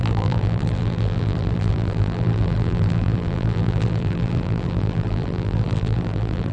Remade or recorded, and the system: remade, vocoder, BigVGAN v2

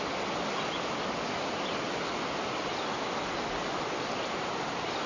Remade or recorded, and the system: recorded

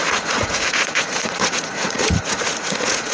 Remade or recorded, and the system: remade, vocoder, Vocos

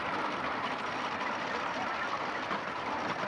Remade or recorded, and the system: recorded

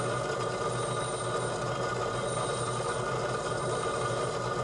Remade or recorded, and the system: recorded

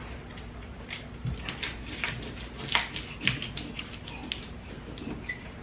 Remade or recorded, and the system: recorded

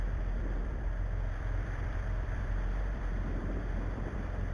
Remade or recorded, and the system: remade, vocoder, BigVGAN v2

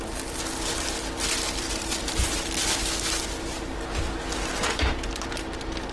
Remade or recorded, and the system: recorded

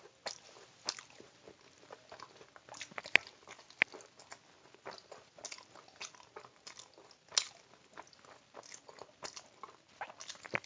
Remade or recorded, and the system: recorded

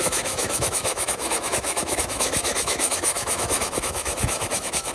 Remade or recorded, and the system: remade, autoencoder, DAC-VAE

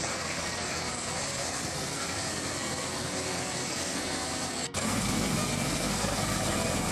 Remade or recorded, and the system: remade, codec, SNAC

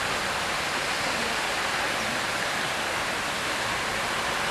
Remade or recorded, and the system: recorded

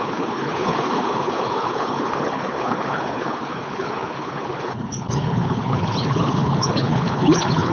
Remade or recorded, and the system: remade, codec, HILCodec